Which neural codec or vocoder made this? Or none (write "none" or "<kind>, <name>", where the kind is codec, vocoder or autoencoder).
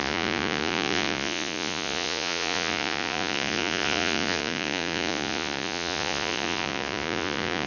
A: vocoder, Vocos